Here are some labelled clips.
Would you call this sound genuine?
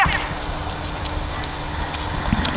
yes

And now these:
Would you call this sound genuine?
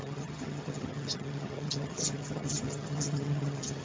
no